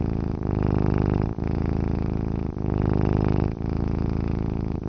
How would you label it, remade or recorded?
remade